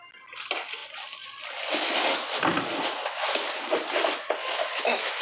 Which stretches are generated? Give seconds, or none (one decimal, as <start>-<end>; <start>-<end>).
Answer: 4.4-5.2